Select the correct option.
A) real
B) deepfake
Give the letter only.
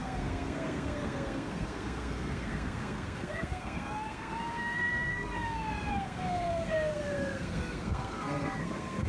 B